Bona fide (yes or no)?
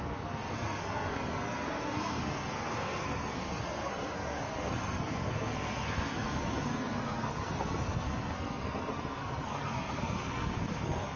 no